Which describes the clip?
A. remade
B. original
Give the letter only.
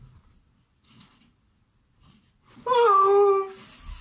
B